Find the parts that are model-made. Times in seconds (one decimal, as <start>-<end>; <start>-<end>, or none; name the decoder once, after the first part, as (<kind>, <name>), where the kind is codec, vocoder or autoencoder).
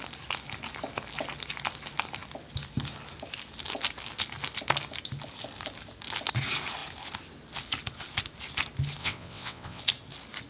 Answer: 9.0-9.8 (vocoder, WaveNeXt)